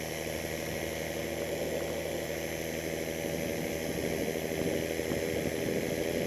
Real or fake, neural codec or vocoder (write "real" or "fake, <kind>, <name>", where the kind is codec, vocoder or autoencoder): real